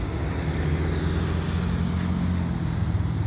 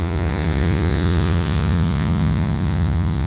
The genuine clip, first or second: first